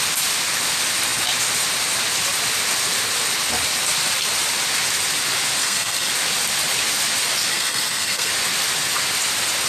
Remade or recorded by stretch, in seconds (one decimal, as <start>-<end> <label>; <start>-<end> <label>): 0.0-5.6 recorded; 5.6-6.1 remade; 6.1-7.5 recorded; 7.5-8.3 remade; 8.3-9.7 recorded